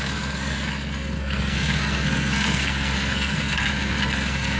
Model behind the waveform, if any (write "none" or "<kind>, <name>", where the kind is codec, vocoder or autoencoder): codec, SNAC